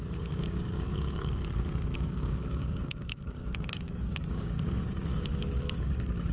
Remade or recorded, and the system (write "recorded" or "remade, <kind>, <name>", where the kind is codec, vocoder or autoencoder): remade, codec, DAC